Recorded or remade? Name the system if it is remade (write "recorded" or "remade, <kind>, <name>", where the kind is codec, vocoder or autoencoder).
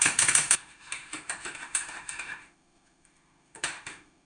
remade, autoencoder, DAC-VAE